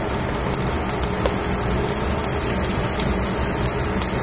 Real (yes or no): yes